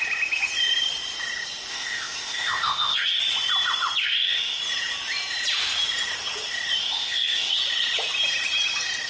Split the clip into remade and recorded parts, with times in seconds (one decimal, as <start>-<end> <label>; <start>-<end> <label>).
0.0-1.7 recorded; 1.7-3.2 remade; 3.2-4.0 recorded; 4.0-4.6 remade; 4.6-6.8 recorded; 6.8-7.5 remade; 7.5-9.1 recorded